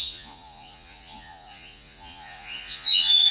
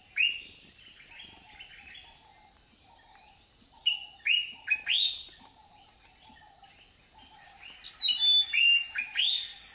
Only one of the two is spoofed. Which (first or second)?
first